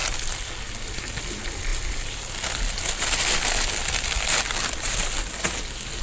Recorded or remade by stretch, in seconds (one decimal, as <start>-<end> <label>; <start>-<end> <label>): 0.0-6.0 recorded